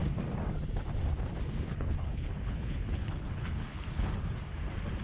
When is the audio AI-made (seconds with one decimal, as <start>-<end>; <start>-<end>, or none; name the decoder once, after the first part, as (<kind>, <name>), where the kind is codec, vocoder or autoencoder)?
1.7-4.1 (codec, HILCodec)